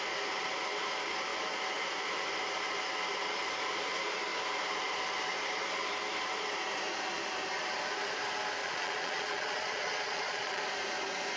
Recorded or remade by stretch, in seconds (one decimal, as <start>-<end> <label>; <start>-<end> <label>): 0.0-8.6 recorded; 8.6-10.6 remade; 10.6-11.4 recorded